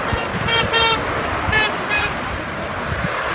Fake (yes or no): no